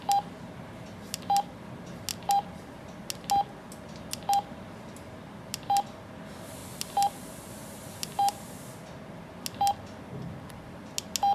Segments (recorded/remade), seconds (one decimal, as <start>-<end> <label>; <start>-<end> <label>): 0.0-11.3 recorded